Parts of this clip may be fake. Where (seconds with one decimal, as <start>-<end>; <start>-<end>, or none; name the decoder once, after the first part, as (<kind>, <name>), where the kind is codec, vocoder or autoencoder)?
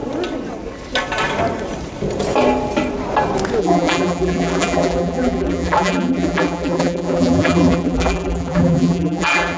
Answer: 3.6-9.6 (vocoder, BigVGAN v2)